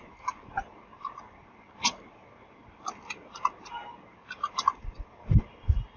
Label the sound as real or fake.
real